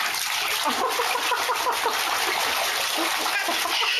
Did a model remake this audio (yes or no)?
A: no